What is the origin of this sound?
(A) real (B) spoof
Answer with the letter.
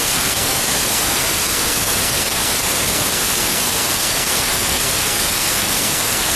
B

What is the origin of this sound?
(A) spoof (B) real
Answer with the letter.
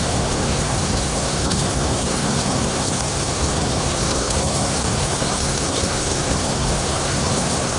A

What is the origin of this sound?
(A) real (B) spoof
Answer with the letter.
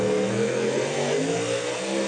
B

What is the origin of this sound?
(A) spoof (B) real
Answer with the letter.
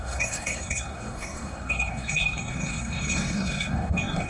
A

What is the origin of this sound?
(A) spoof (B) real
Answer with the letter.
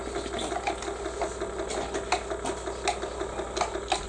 B